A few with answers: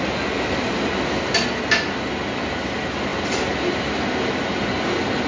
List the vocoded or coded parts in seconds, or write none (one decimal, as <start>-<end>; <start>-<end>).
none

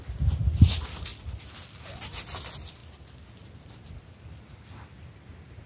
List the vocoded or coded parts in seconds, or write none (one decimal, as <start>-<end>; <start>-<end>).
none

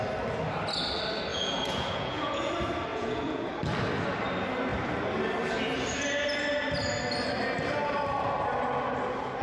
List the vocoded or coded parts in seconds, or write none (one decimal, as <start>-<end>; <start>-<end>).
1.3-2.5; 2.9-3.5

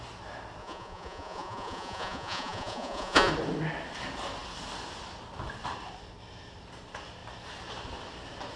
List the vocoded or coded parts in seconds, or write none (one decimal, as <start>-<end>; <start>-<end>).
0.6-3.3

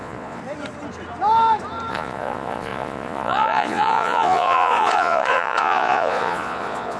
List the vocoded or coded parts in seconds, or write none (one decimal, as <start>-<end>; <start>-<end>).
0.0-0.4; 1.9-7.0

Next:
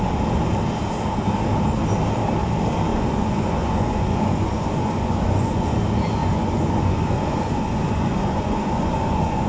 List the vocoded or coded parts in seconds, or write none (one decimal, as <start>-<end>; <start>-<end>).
2.9-5.7; 6.2-9.5